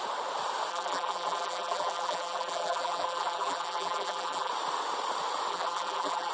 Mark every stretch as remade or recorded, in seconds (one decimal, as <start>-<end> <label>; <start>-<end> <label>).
0.0-0.7 recorded; 0.7-4.5 remade; 4.5-5.5 recorded; 5.5-6.3 remade